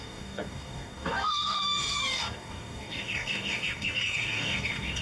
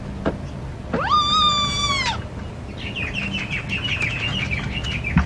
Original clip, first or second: second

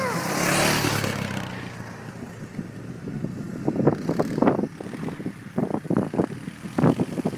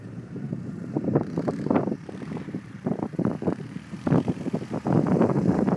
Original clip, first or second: first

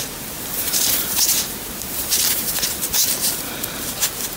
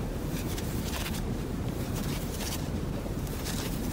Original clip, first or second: first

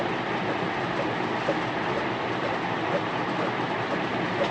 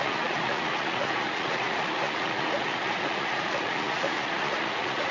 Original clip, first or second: first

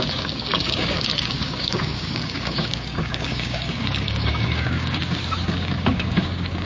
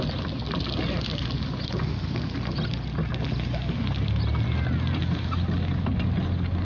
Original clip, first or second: second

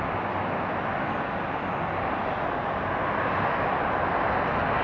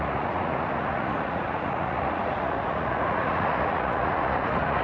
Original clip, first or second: first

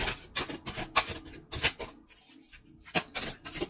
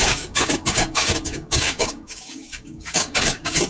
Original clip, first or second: first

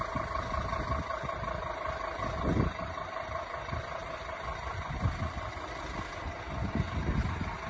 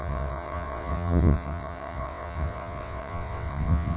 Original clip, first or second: first